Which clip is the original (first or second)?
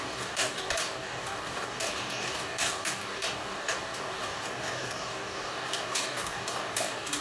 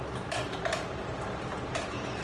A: second